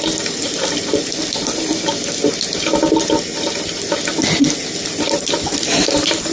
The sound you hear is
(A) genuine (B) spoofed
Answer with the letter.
A